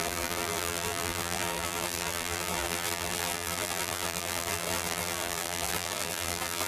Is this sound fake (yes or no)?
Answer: yes